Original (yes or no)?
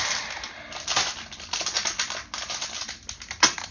yes